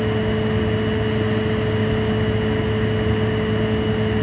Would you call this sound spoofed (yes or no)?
no